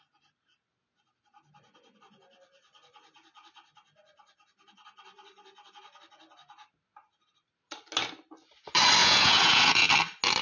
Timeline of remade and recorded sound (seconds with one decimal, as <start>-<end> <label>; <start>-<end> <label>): 0.0-9.0 recorded; 9.0-9.9 remade; 9.9-10.4 recorded